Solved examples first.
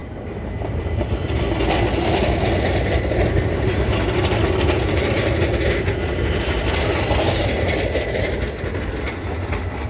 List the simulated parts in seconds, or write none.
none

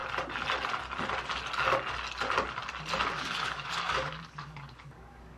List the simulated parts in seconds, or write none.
3.0-5.4 (codec, DAC)

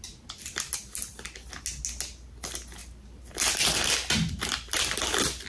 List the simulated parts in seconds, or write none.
none

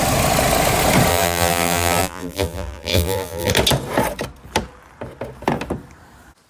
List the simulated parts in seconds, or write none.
1.1-3.5 (vocoder, BigVGAN v2)

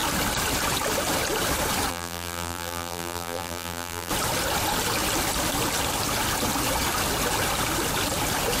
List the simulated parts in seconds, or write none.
1.9-4.1 (vocoder, BigVGAN v2)

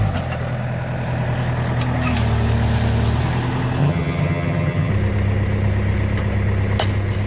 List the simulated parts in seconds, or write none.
3.8-4.9 (vocoder, HiFi-GAN)

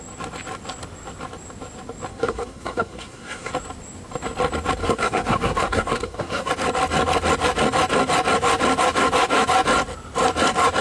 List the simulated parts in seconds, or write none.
2.1-3.5 (codec, SNAC); 4.8-6.5